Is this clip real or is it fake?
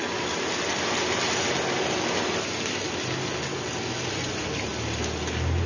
real